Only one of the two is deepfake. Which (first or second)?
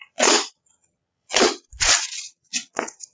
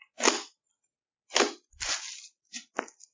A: first